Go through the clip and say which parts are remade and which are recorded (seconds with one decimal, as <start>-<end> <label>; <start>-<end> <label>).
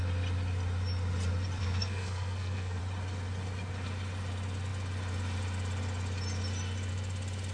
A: 0.0-1.6 recorded; 1.6-2.8 remade; 2.8-7.5 recorded